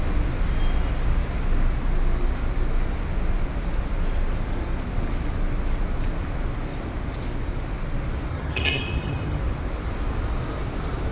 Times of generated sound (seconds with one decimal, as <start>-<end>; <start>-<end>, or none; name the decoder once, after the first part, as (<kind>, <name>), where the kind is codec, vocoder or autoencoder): 8.3-9.4 (vocoder, HiFi-GAN)